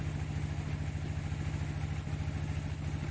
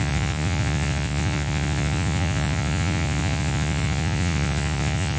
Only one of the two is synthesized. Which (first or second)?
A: second